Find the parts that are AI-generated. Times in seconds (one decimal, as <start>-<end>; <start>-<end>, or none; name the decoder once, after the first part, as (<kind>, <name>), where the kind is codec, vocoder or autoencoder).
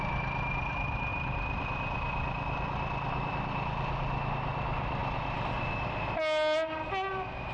none